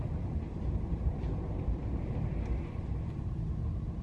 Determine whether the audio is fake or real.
fake